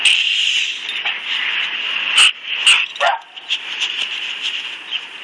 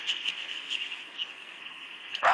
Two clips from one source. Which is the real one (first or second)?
first